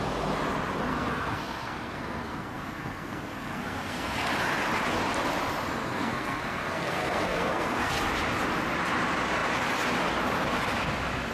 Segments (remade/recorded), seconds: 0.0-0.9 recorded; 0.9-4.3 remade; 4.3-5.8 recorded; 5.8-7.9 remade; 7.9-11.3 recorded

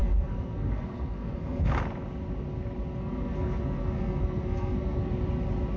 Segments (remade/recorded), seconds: 0.0-1.7 remade; 1.7-3.0 recorded; 3.0-5.1 remade; 5.1-5.8 recorded

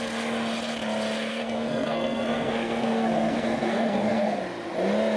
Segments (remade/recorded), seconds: 0.0-1.3 recorded; 1.3-4.4 remade; 4.4-5.2 recorded